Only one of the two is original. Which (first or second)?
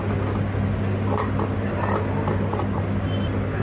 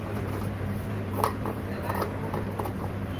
first